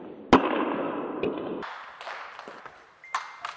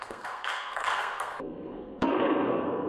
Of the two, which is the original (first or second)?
first